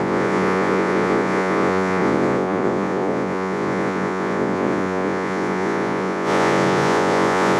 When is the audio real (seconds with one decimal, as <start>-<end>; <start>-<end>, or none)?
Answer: none